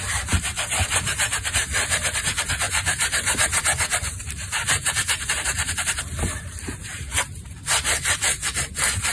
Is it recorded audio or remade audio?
remade